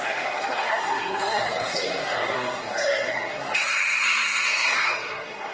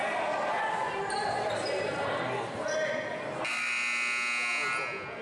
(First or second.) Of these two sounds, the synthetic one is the first